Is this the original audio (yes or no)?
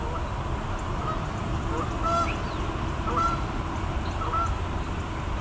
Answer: yes